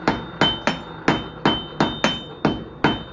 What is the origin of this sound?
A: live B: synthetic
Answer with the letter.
A